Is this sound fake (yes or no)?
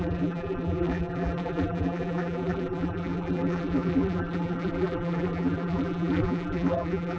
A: yes